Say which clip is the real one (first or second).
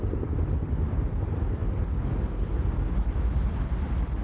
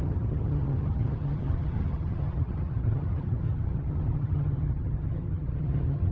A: first